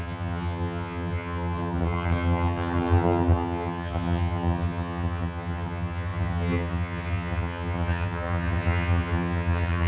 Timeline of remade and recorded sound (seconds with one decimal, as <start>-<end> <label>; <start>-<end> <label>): 0.0-9.9 remade